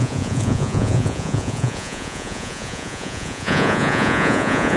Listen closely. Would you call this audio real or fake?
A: fake